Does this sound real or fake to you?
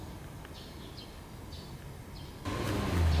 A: real